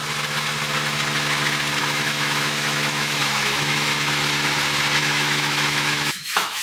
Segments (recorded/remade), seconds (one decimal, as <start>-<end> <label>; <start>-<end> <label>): 0.0-1.8 recorded; 1.8-3.9 remade; 3.9-5.0 recorded; 5.0-6.6 remade